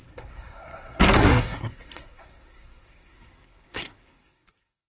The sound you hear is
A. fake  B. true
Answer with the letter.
A